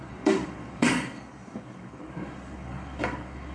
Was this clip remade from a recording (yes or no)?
yes